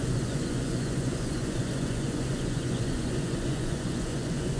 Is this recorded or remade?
remade